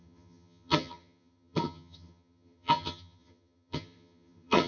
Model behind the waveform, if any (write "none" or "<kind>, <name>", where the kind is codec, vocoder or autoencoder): vocoder, HiFi-GAN